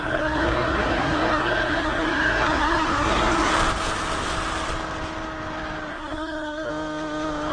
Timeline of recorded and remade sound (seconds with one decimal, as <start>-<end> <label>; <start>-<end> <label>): 0.0-3.5 remade; 3.5-5.9 recorded; 5.9-6.7 remade; 6.7-7.5 recorded